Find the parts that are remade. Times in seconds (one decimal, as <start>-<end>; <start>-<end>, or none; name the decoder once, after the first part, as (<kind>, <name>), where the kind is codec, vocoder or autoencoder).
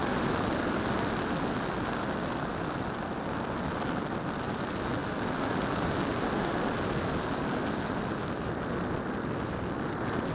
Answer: none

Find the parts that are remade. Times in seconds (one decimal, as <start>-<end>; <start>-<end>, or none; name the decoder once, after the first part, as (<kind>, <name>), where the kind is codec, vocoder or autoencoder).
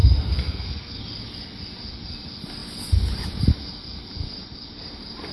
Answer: 0.0-1.0 (codec, SNAC)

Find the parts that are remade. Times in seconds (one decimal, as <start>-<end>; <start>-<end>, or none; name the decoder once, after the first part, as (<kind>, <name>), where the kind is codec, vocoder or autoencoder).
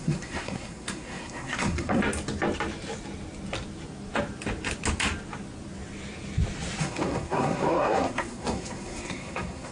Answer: 0.0-2.0 (codec, SNAC); 6.8-9.7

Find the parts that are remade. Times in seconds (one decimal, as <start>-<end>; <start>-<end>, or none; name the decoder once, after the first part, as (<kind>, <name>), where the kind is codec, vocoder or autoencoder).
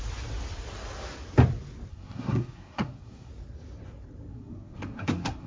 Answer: 1.9-3.3 (codec, SNAC); 4.3-5.5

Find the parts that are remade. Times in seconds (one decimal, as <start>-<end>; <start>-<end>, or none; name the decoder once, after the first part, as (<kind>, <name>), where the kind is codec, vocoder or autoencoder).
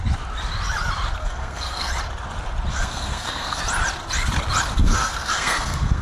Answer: 1.2-1.9 (codec, SNAC); 2.7-3.6; 4.8-6.0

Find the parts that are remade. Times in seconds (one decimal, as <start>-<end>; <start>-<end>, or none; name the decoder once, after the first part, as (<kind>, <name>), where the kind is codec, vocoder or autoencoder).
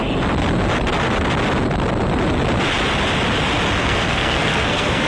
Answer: 3.8-5.1 (codec, SNAC)